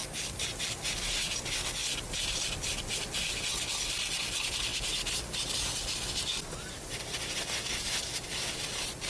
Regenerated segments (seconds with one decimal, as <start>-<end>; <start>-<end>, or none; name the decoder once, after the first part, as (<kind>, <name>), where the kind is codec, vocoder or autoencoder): 0.0-0.7 (vocoder, BigVGAN v2)